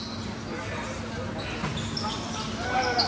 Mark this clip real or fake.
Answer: real